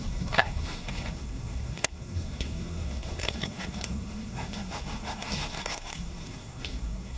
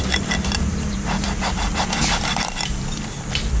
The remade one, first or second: first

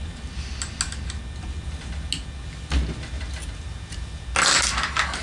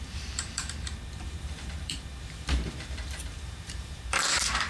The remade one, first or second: second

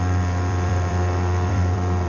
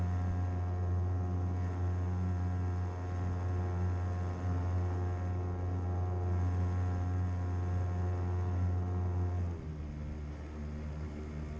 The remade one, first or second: first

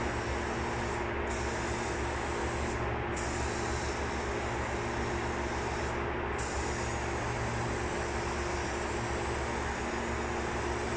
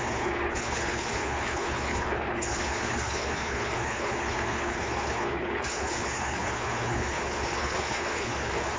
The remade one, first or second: second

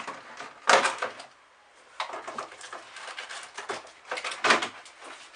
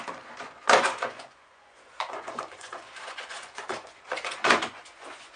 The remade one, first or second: second